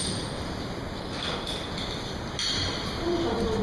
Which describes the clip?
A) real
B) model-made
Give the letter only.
A